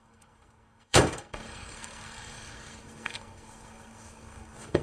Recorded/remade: remade